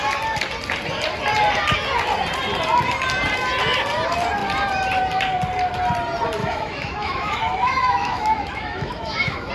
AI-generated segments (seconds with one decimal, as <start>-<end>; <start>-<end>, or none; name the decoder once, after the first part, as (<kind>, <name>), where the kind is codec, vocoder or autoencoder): 6.4-9.5 (autoencoder, DAC-VAE)